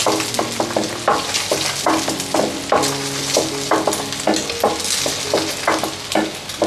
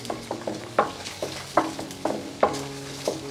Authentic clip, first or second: first